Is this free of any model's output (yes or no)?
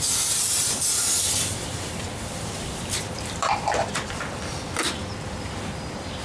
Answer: no